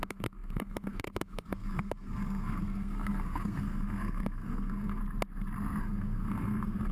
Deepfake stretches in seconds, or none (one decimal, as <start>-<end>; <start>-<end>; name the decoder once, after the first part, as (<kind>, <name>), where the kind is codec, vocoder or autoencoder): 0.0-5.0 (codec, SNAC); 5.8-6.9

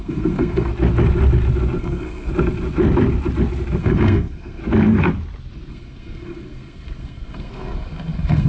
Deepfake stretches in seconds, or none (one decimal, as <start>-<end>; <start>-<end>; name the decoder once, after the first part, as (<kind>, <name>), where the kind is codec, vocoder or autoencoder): 0.0-0.7 (codec, SNAC); 1.8-2.3; 3.8-4.6; 5.7-8.5

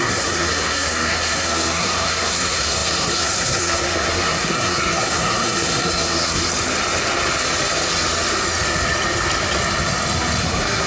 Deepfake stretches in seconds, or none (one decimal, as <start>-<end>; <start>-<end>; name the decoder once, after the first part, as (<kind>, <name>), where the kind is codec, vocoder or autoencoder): 0.0-6.4 (codec, SNAC); 10.4-10.9

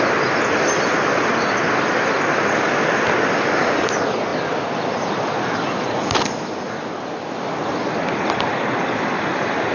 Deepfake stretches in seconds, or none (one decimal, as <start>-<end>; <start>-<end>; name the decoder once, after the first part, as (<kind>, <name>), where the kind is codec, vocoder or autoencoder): none

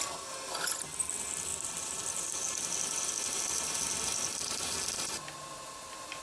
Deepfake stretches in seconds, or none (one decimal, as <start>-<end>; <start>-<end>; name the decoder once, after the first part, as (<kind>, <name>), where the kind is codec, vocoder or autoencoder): none

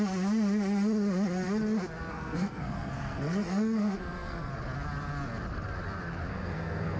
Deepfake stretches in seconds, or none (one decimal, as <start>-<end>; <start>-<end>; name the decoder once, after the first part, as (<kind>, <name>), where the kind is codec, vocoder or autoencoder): 2.1-4.5 (codec, SNAC); 6.3-7.0

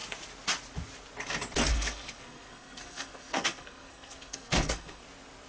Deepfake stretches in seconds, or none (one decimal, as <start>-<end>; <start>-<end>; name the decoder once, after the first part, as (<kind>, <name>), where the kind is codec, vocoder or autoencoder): 1.7-5.0 (codec, SNAC)